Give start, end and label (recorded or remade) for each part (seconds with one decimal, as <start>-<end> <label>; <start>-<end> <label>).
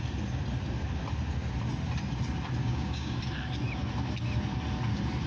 0.0-2.6 recorded; 2.6-3.2 remade; 3.2-5.3 recorded